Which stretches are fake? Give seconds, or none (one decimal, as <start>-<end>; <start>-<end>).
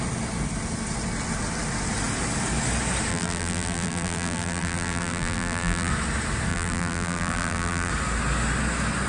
3.1-5.9; 6.5-7.9